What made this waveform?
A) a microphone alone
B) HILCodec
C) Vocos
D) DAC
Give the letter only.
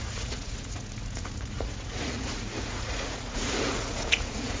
C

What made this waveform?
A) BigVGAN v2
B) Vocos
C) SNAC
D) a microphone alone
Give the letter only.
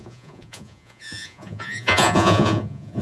B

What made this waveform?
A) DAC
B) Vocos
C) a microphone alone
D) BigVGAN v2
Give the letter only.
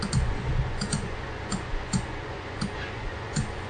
B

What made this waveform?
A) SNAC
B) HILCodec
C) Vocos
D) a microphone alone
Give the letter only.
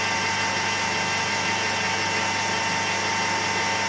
D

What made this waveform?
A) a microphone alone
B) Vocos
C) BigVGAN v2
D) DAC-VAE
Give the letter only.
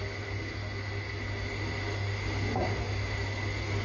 A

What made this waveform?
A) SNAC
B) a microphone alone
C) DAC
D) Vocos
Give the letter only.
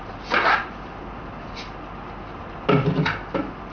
B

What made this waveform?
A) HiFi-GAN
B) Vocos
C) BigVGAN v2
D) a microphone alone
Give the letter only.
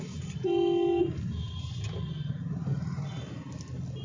D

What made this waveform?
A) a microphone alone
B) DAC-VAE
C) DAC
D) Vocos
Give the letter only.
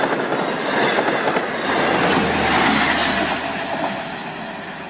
A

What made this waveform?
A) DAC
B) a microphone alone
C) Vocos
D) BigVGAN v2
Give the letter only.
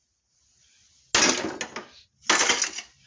B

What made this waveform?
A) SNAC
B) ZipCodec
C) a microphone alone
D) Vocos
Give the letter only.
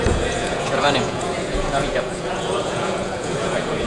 D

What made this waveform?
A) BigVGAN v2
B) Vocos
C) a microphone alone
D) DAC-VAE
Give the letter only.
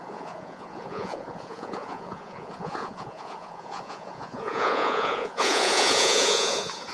B